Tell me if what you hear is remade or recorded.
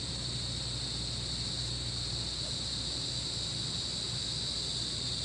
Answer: recorded